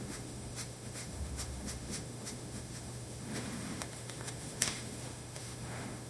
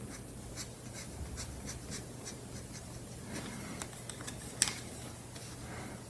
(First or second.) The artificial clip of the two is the first